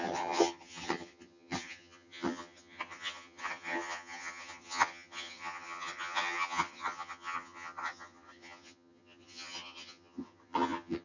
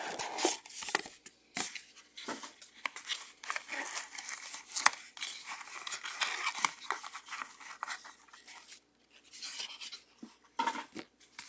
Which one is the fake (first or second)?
first